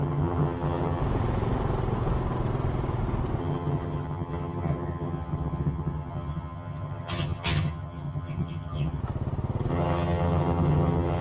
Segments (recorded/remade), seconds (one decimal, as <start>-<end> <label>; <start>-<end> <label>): 0.0-1.0 remade; 1.0-3.4 recorded; 3.4-9.0 remade; 9.0-9.7 recorded; 9.7-11.2 remade